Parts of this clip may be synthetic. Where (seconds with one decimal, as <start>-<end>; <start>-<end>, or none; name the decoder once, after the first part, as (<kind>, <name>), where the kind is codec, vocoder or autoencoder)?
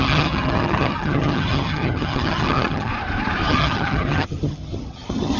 0.0-2.9 (vocoder, HiFi-GAN); 3.5-5.4